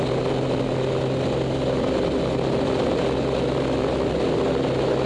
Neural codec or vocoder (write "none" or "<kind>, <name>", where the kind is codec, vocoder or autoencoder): none